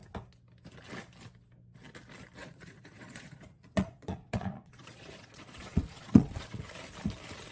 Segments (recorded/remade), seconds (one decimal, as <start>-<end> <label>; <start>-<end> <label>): 0.0-2.4 recorded; 2.4-6.6 remade; 6.6-7.5 recorded